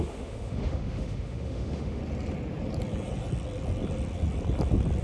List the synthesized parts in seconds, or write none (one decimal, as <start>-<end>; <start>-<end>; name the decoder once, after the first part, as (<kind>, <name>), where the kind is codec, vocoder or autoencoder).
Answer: 0.0-2.0 (autoencoder, DAC-VAE)